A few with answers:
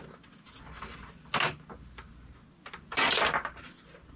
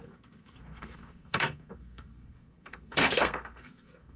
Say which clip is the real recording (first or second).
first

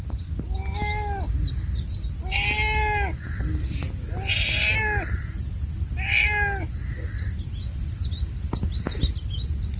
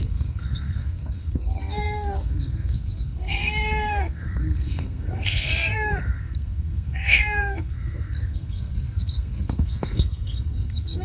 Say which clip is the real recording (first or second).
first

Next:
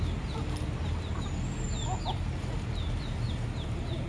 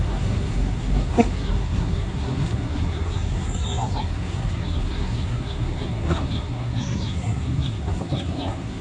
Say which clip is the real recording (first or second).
first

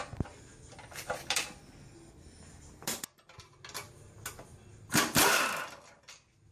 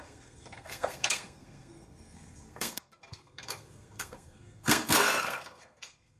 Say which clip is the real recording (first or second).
first